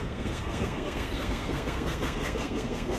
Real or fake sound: fake